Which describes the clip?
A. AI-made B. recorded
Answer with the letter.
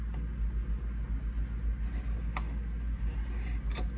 B